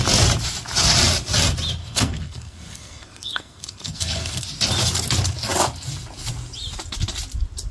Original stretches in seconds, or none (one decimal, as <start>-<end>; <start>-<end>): 0.0-1.8; 4.4-7.7